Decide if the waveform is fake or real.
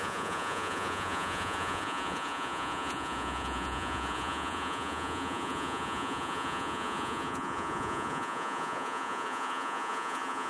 fake